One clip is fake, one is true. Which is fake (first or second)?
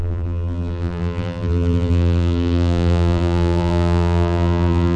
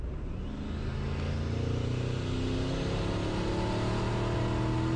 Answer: first